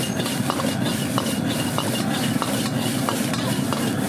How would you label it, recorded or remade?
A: recorded